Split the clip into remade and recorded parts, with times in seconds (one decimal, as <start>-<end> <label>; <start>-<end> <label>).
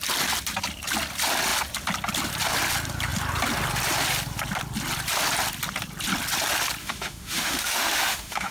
0.0-6.8 recorded; 6.8-8.5 remade